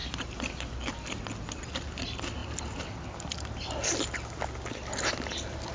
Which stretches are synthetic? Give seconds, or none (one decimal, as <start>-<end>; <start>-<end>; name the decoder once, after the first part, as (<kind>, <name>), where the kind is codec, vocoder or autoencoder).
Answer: none